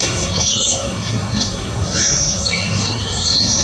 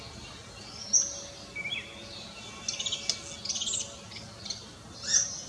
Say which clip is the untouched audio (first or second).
second